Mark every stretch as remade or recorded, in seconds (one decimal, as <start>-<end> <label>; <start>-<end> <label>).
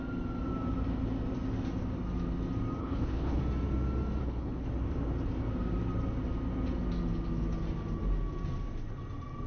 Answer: 0.0-2.8 recorded; 2.8-3.4 remade; 3.4-4.2 recorded; 4.2-4.7 remade; 4.7-9.5 recorded